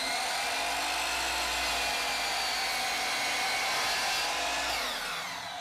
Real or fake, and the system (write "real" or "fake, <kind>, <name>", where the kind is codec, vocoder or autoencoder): real